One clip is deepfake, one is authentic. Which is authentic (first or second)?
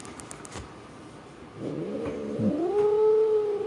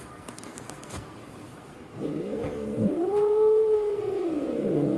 first